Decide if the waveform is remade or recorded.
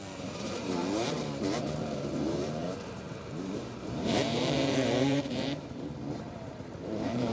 remade